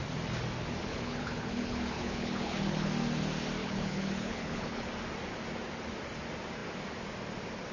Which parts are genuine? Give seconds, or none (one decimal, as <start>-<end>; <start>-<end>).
0.0-0.9; 2.9-3.6; 4.9-7.7

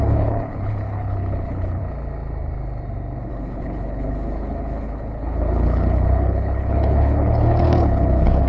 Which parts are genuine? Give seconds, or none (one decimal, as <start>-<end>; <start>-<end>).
1.8-3.3

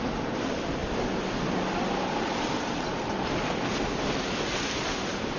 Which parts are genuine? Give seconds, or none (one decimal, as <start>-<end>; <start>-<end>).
0.0-5.4

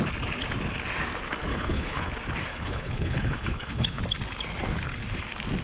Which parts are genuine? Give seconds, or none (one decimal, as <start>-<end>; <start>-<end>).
0.0-1.5; 2.1-2.5; 4.0-5.6

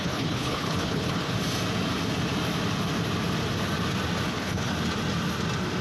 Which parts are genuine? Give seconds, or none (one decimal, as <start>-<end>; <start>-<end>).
1.3-4.3; 4.7-5.8